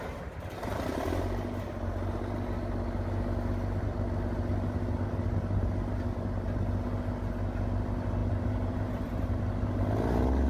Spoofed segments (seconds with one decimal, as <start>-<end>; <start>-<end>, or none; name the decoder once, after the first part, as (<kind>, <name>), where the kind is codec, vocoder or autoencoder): 8.2-9.4 (vocoder, BigVGAN v2)